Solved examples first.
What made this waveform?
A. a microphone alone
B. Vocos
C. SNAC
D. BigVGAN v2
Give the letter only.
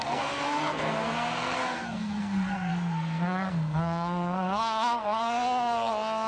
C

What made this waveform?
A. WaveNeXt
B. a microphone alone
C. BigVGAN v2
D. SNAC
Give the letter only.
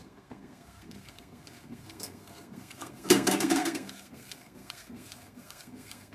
D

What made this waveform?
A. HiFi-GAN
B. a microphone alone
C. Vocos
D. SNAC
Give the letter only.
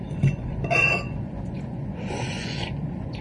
C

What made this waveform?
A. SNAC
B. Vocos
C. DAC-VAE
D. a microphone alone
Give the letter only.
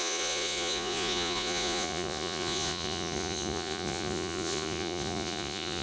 B